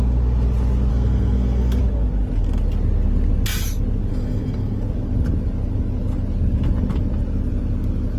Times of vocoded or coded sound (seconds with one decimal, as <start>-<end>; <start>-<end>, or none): 0.9-1.8; 4.1-4.8